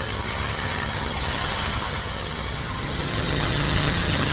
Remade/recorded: remade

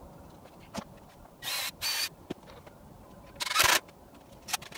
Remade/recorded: recorded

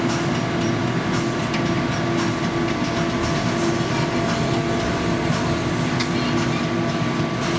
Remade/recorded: recorded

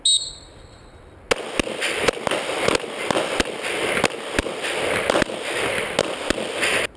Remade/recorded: recorded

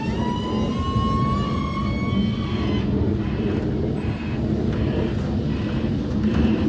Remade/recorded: recorded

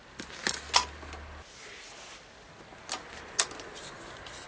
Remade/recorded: recorded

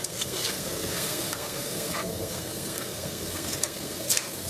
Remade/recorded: remade